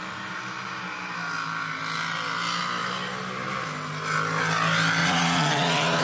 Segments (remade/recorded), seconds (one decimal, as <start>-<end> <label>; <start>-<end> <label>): 0.0-5.0 recorded; 5.0-6.0 remade